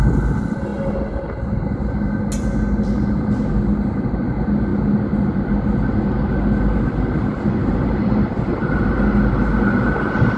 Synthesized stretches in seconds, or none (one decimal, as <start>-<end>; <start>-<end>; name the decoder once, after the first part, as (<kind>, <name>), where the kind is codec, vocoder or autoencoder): 7.6-8.9 (vocoder, BigVGAN v2)